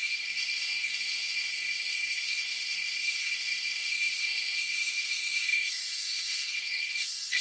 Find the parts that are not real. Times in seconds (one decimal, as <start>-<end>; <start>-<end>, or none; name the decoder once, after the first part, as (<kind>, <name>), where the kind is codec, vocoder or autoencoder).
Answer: 0.0-7.4 (codec, SNAC)